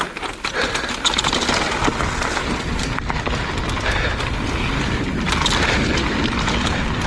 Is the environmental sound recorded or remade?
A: recorded